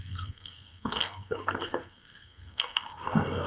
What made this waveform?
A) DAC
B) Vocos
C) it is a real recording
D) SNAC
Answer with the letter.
D